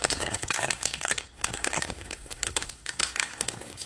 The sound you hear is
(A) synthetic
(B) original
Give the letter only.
A